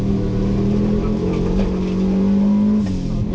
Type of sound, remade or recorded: recorded